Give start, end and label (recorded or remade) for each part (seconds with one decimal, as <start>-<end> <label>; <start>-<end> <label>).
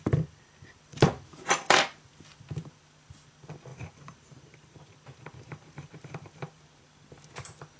0.0-0.9 recorded; 0.9-2.1 remade; 2.1-3.7 recorded; 3.7-6.7 remade; 6.7-7.8 recorded